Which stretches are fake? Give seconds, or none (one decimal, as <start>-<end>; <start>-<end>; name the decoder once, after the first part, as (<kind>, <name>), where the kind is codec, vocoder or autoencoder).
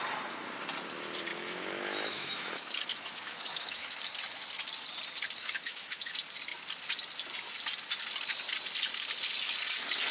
1.3-4.0 (autoencoder, DAC-VAE); 5.4-6.1